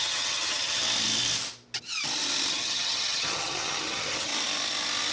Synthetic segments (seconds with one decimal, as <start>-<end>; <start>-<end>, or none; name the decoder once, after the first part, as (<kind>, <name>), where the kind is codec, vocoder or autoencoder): 0.0-0.8 (vocoder, HiFi-GAN); 2.5-4.3